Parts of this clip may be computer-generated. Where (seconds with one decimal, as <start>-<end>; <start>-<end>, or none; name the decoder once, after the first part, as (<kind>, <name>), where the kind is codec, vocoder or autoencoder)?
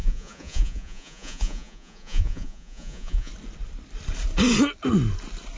0.0-3.3 (vocoder, Vocos)